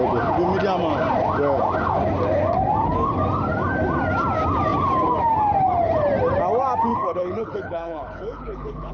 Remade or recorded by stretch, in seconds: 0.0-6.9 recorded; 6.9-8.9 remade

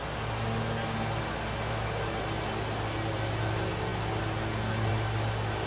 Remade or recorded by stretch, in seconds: 0.0-5.7 recorded

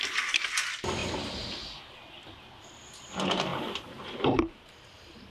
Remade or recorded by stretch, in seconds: 0.0-3.5 recorded; 3.5-5.3 remade

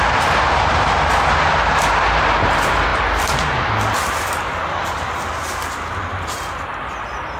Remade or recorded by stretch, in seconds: 0.0-7.4 recorded

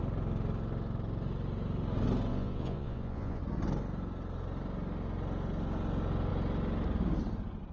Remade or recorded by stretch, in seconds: 0.0-2.3 recorded; 2.3-3.4 remade; 3.4-7.7 recorded